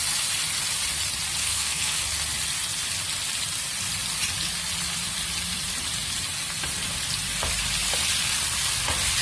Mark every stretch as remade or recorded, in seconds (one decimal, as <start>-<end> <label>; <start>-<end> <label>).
0.0-1.4 recorded; 1.4-2.0 remade; 2.0-9.2 recorded